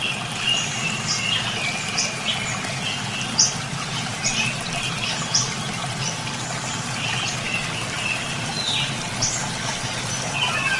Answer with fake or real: real